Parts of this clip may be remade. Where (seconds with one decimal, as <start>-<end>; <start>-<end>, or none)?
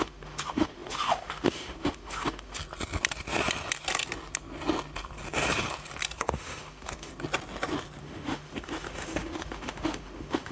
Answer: 0.0-2.6; 6.2-7.1; 8.0-10.5